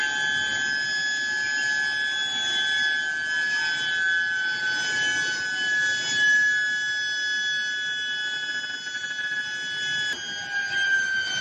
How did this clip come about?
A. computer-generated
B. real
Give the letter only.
B